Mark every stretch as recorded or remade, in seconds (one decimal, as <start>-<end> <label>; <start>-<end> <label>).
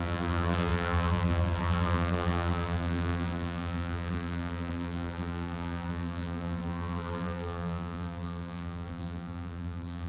0.0-10.1 remade